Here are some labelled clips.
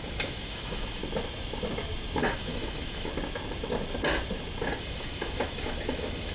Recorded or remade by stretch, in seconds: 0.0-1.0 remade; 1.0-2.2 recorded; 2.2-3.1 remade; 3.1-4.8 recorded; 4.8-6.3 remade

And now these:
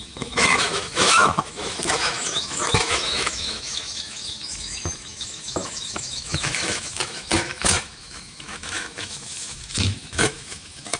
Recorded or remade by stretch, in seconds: 0.0-11.0 remade

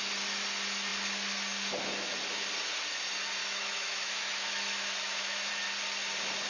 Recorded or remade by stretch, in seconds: 0.0-3.4 recorded; 3.4-5.5 remade; 5.5-6.5 recorded

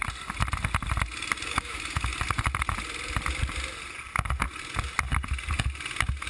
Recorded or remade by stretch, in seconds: 0.0-1.5 recorded; 1.5-2.1 remade; 2.1-6.3 recorded

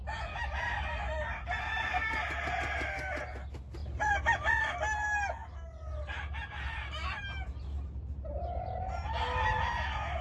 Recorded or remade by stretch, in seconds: 0.0-10.2 recorded

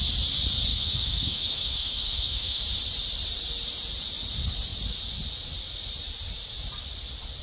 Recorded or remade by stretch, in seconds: 0.0-0.7 recorded; 0.7-2.6 remade; 2.6-7.4 recorded

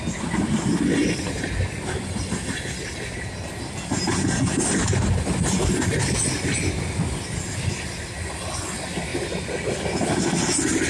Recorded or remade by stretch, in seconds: 0.0-10.9 recorded

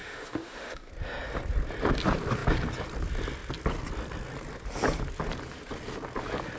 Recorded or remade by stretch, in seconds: 0.0-0.9 remade; 0.9-6.6 recorded